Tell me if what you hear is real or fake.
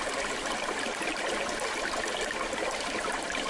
real